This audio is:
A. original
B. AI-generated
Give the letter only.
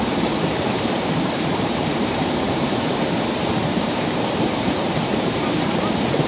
B